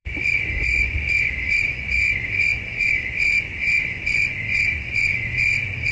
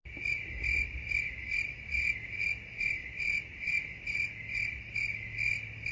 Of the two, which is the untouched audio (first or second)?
second